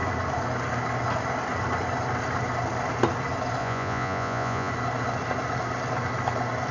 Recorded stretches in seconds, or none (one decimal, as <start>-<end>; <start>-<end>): 0.0-3.6; 4.7-6.7